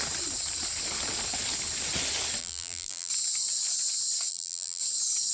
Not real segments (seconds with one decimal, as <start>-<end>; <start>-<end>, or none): 2.4-3.1; 4.3-4.8